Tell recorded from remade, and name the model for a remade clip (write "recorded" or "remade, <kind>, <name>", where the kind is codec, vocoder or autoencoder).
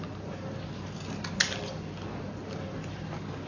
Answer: recorded